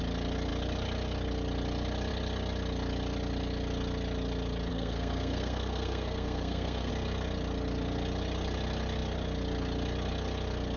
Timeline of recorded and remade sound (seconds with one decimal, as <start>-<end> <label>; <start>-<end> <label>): 0.0-4.7 recorded; 4.7-6.9 remade; 6.9-10.8 recorded